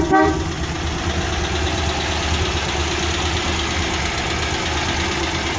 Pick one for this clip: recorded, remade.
recorded